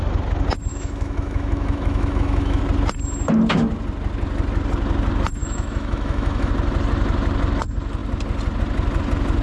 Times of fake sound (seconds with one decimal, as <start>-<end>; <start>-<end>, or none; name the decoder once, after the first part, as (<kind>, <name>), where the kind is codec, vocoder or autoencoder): 0.7-2.6 (autoencoder, DAC-VAE); 5.4-6.5